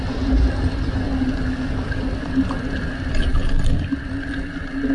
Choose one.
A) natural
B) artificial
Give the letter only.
A